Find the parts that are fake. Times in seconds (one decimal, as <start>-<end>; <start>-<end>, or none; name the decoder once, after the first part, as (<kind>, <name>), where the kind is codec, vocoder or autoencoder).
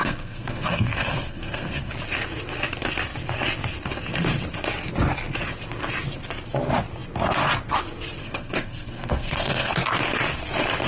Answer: 0.0-1.9 (codec, SNAC); 8.2-9.7